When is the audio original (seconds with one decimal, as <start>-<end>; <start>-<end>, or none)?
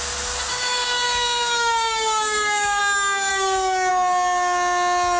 0.0-0.5; 2.8-3.3; 3.9-5.2